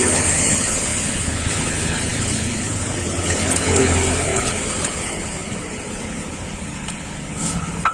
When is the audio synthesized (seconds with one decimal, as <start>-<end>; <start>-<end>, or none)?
0.0-7.9